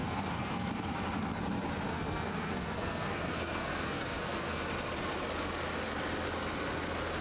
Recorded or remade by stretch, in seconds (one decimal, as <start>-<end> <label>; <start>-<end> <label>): 0.0-0.7 remade; 0.7-1.9 recorded; 1.9-4.6 remade; 4.6-7.2 recorded